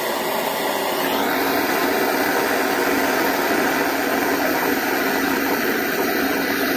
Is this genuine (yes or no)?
yes